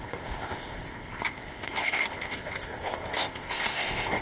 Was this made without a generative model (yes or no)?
no